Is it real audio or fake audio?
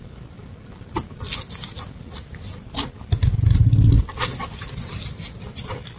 real